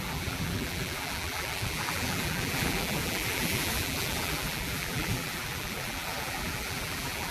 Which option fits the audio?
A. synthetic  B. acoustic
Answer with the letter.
A